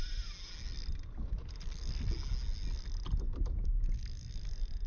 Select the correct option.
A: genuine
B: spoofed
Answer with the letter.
A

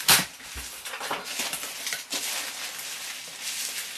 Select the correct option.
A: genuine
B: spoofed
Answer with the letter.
A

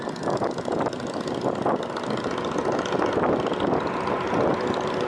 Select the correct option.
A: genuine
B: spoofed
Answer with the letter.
A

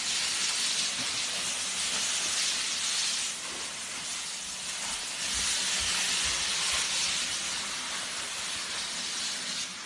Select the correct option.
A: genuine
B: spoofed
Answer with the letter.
A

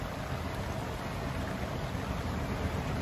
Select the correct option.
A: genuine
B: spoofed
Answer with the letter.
A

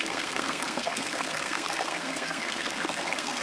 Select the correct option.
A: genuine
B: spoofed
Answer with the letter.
B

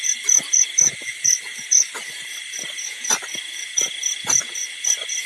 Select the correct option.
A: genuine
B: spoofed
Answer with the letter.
A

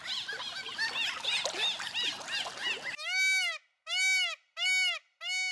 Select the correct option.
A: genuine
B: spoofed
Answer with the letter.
A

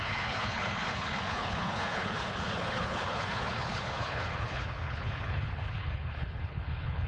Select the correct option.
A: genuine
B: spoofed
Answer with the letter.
B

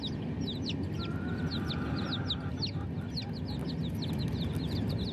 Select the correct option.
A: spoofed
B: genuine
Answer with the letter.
B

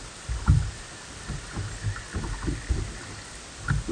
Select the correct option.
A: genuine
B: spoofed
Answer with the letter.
A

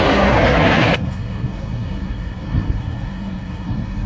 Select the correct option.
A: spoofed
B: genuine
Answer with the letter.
A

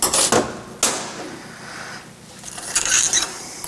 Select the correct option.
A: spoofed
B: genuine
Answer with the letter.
B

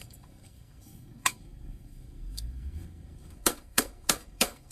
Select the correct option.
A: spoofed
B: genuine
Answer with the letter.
A